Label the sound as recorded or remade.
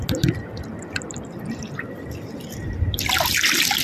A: recorded